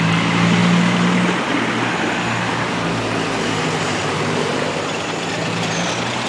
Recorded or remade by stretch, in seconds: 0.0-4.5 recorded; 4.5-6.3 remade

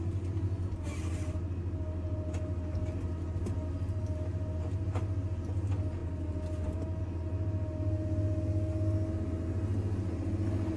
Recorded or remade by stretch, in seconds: 0.0-10.8 recorded

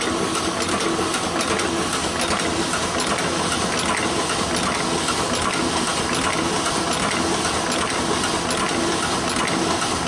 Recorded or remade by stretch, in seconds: 0.0-10.1 recorded

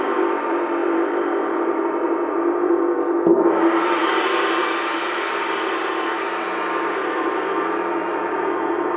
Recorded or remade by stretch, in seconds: 0.0-9.0 remade

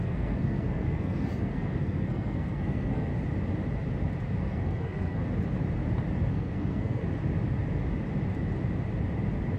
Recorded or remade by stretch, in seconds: 0.0-3.1 remade; 3.1-4.4 recorded; 4.4-5.2 remade; 5.2-6.3 recorded; 6.3-7.0 remade; 7.0-9.6 recorded